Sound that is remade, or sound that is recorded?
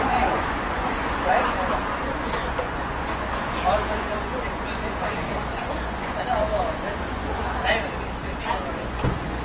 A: remade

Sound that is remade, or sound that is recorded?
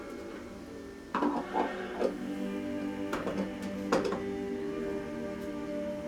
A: recorded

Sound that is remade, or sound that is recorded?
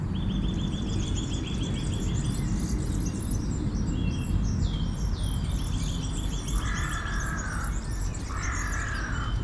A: recorded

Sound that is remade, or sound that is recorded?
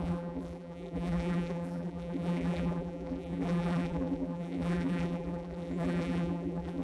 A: remade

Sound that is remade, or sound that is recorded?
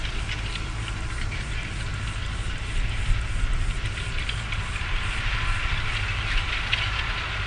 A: remade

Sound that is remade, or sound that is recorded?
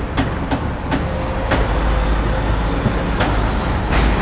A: recorded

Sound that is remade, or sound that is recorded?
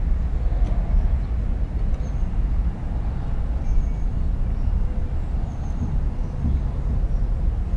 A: recorded